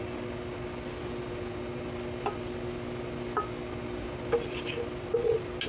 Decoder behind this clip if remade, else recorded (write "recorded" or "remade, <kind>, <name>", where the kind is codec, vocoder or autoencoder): recorded